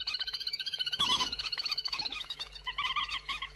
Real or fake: fake